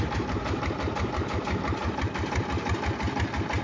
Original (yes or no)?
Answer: yes